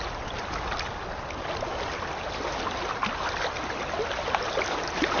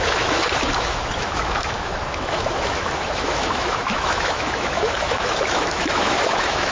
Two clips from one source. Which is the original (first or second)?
first